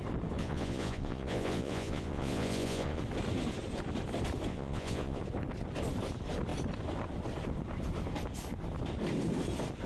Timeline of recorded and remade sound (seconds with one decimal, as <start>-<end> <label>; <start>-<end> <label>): 0.0-0.4 recorded; 0.4-3.0 remade; 3.0-4.5 recorded; 4.5-5.2 remade; 5.2-9.9 recorded